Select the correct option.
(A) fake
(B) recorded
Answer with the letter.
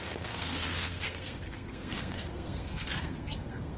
A